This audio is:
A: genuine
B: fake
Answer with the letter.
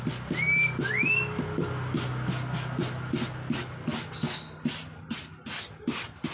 A